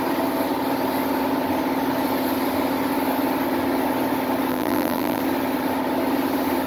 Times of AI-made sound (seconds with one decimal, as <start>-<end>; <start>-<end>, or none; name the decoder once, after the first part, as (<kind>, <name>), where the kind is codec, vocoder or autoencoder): 4.5-5.2 (vocoder, BigVGAN v2)